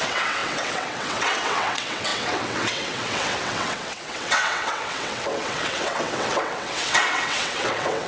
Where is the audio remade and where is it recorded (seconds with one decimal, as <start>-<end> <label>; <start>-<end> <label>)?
0.0-8.1 remade